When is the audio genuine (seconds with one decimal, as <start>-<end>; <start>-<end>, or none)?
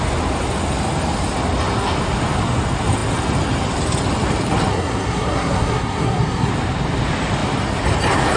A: 0.0-4.7; 6.5-8.4